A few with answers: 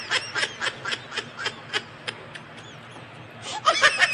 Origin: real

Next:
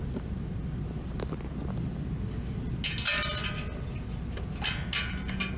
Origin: real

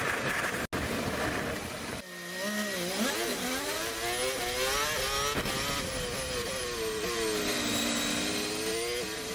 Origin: real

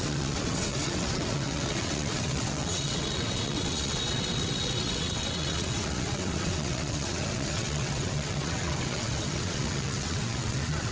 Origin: fake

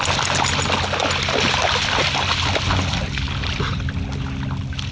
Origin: real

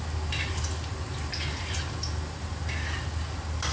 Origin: real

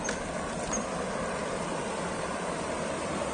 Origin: real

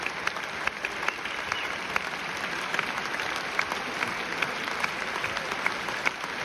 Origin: real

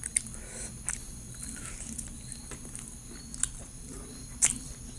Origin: real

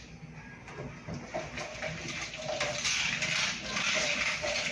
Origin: real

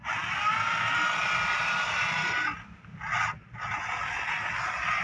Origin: real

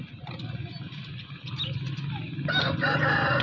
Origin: real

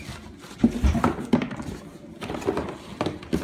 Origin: real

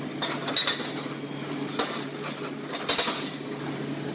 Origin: real